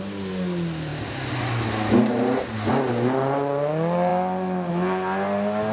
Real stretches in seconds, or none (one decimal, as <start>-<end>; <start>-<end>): 0.0-5.7